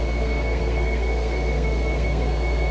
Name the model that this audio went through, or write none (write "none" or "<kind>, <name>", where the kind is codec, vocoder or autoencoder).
codec, SNAC